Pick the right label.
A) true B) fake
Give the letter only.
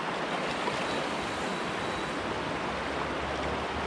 A